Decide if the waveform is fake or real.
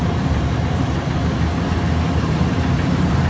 fake